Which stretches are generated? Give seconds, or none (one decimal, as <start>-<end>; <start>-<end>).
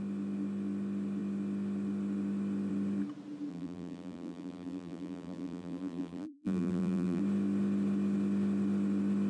3.5-7.2